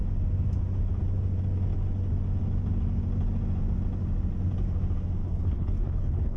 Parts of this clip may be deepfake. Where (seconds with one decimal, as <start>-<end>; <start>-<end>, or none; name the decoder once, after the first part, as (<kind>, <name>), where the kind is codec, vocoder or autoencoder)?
5.2-6.4 (codec, HILCodec)